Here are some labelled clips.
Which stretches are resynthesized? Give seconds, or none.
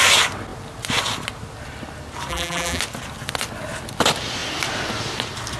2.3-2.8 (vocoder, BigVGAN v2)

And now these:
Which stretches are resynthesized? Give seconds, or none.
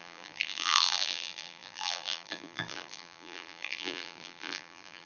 0.0-5.1 (vocoder, BigVGAN v2)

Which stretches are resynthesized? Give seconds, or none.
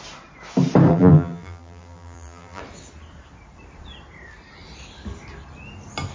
0.9-2.6 (vocoder, BigVGAN v2)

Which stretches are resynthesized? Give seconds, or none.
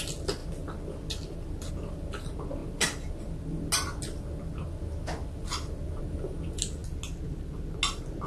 none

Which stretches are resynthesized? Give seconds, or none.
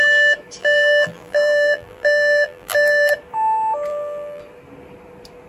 0.6-3.1 (vocoder, BigVGAN v2); 3.9-4.4